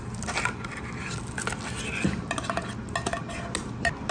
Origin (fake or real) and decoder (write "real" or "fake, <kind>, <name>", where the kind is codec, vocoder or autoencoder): real